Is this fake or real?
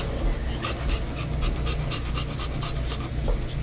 real